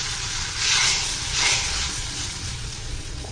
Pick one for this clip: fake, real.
fake